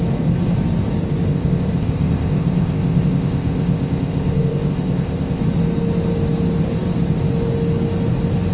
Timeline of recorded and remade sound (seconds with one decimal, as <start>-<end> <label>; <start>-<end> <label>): 0.0-1.3 recorded; 1.3-5.4 remade; 5.4-8.5 recorded